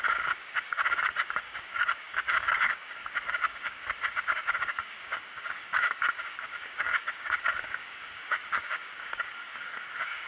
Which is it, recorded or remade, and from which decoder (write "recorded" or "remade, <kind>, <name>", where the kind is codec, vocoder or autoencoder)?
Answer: remade, codec, DAC